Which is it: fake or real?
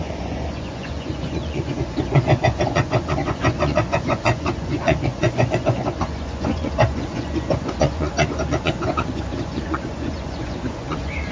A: fake